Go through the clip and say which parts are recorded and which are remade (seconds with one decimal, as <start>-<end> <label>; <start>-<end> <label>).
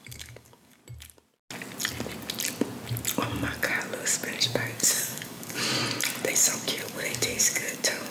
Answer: 0.0-0.8 remade; 0.8-4.4 recorded; 4.4-5.8 remade; 5.8-6.5 recorded; 6.5-8.1 remade